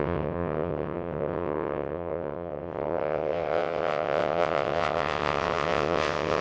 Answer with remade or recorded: remade